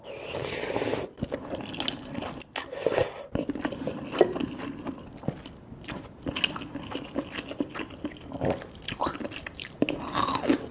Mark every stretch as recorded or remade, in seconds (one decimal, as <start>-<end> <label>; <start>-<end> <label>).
0.0-10.7 recorded